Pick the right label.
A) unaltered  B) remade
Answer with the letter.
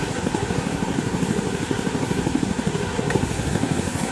B